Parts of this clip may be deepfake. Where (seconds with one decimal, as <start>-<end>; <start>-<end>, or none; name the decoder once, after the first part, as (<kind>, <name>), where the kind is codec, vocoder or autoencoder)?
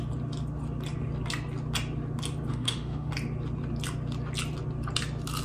2.5-3.1 (autoencoder, DAC-VAE)